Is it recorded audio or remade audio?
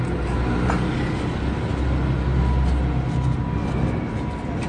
recorded